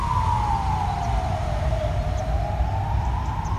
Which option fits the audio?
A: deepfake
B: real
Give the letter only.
B